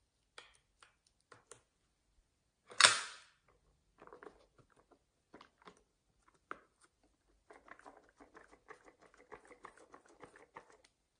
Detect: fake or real real